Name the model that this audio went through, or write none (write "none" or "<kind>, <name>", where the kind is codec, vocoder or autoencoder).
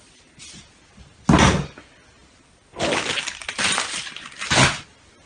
none